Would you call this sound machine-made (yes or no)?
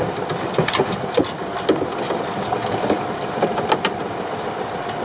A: no